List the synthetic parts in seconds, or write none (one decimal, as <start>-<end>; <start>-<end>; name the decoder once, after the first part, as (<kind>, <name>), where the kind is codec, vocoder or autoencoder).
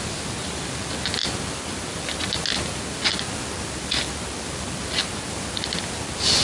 none